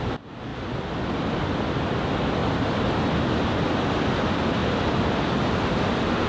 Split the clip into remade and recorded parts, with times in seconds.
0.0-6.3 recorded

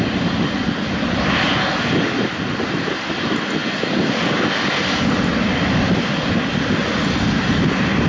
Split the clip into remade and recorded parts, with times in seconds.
0.0-8.1 recorded

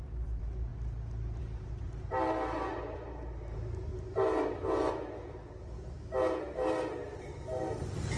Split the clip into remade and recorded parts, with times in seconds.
0.0-0.7 remade; 0.7-1.4 recorded; 1.4-3.9 remade; 3.9-6.5 recorded; 6.5-8.2 remade

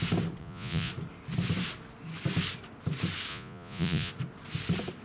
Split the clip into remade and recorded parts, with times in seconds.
0.0-0.4 recorded; 0.4-0.9 remade; 0.9-3.3 recorded; 3.3-4.1 remade; 4.1-5.0 recorded

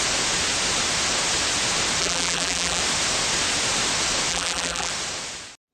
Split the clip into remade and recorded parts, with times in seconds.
0.0-2.0 recorded; 2.0-2.8 remade; 2.8-4.3 recorded; 4.3-4.9 remade; 4.9-5.7 recorded

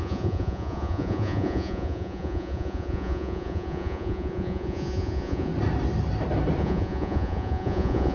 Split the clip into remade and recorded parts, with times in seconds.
0.0-5.5 remade; 5.5-6.6 recorded; 6.6-8.1 remade

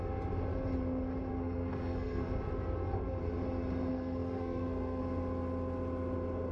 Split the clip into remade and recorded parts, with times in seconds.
0.0-1.3 recorded; 1.3-2.2 remade; 2.2-3.9 recorded; 3.9-5.0 remade; 5.0-6.5 recorded

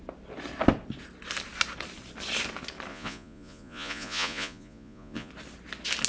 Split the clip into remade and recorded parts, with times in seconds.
0.0-2.9 recorded; 2.9-5.3 remade; 5.3-6.1 recorded